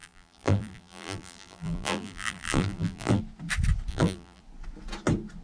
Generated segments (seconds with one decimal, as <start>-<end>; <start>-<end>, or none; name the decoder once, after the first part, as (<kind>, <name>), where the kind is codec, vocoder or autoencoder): 0.0-3.2 (vocoder, BigVGAN v2); 3.9-4.4